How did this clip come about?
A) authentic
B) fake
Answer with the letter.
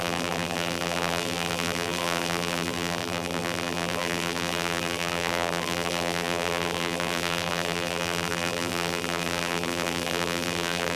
B